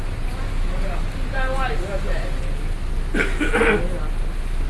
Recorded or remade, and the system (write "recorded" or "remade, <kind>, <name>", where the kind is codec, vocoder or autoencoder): recorded